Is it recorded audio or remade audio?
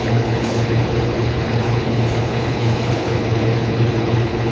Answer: remade